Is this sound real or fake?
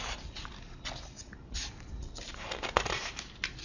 real